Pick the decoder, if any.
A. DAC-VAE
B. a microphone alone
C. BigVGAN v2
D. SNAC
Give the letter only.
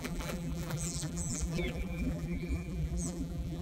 C